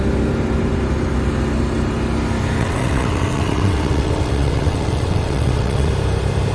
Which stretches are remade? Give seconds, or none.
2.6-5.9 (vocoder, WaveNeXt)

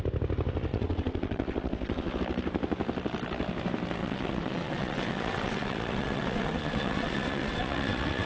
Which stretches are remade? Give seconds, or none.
0.7-2.2 (vocoder, WaveNeXt); 4.0-8.3